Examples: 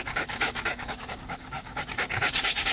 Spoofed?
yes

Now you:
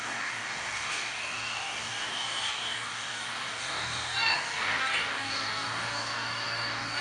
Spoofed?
yes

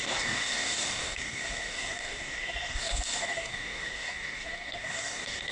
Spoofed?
yes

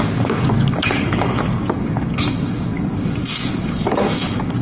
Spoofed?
yes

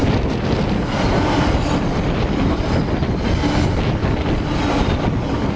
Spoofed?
no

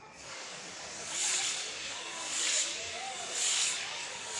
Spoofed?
yes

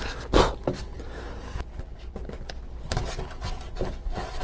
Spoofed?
no